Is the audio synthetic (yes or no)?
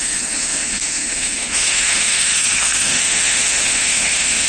yes